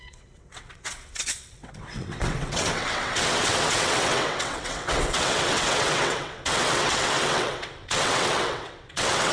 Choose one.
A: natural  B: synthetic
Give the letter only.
B